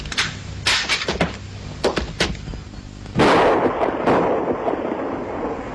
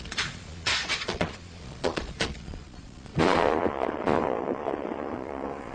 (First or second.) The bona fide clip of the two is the first